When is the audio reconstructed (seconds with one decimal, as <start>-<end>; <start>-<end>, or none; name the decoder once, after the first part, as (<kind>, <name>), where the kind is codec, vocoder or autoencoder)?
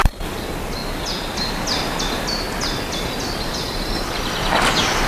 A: none